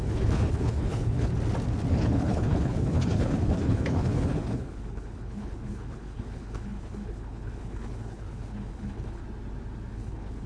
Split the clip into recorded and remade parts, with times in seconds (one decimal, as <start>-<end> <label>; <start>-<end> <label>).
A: 0.0-1.3 remade; 1.3-1.9 recorded; 1.9-9.2 remade; 9.2-9.9 recorded; 9.9-10.5 remade